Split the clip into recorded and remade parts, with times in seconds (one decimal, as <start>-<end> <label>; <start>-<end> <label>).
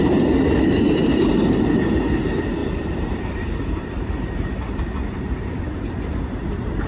0.0-2.6 recorded; 2.6-6.9 remade